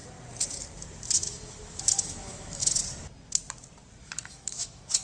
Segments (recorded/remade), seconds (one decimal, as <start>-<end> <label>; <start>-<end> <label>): 0.0-1.3 recorded; 1.3-2.8 remade; 2.8-4.0 recorded; 4.0-5.0 remade